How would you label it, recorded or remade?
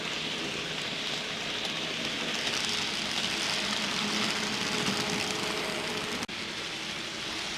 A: recorded